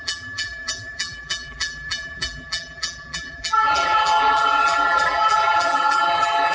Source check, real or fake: fake